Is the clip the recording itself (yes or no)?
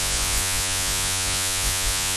no